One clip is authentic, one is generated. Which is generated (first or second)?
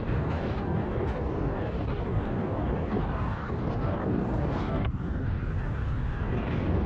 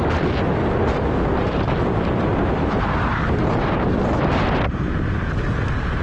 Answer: first